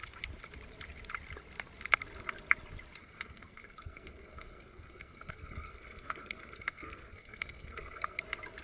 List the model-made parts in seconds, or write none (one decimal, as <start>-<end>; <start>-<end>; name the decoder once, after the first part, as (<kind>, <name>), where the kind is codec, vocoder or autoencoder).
3.0-8.2 (codec, SNAC)